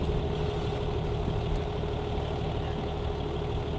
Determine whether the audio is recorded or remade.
recorded